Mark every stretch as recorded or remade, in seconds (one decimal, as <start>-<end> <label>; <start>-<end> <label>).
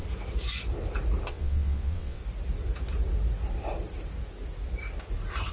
0.0-1.3 recorded; 1.3-2.2 remade; 2.2-5.5 recorded